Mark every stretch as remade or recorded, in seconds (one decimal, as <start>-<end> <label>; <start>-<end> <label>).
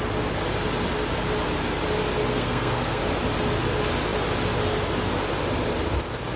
0.0-2.3 recorded; 2.3-3.0 remade; 3.0-6.4 recorded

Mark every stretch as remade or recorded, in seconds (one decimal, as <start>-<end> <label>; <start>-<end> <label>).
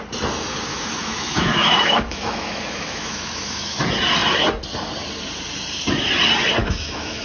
0.0-0.7 recorded; 0.7-3.8 remade; 3.8-6.6 recorded; 6.6-7.2 remade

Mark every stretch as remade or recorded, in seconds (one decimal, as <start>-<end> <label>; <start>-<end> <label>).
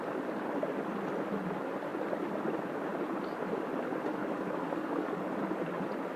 0.0-4.2 recorded; 4.2-5.2 remade; 5.2-6.2 recorded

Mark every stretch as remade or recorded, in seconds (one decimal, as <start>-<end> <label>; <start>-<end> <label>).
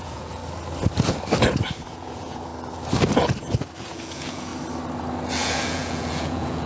0.0-0.4 remade; 0.4-1.9 recorded; 1.9-2.5 remade; 2.5-3.8 recorded; 3.8-4.5 remade; 4.5-5.3 recorded; 5.3-6.7 remade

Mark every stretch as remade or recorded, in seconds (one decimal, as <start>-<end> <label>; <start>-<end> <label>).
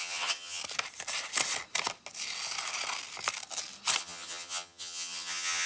0.0-0.6 remade; 0.6-4.0 recorded; 4.0-5.7 remade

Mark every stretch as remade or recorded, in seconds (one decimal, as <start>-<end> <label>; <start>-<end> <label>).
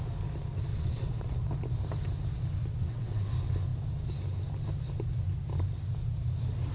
0.0-0.7 recorded; 0.7-1.3 remade; 1.3-2.8 recorded; 2.8-3.3 remade; 3.3-6.7 recorded